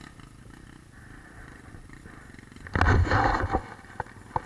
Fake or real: real